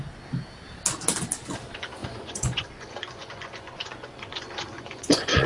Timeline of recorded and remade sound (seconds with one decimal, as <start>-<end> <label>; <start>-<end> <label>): 0.0-2.0 recorded; 2.0-5.5 remade